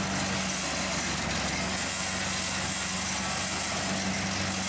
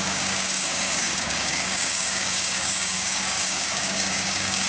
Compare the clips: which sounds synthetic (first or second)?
second